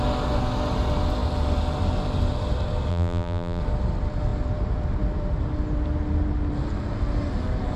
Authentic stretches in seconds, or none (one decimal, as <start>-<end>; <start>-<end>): 0.0-2.9; 3.6-7.8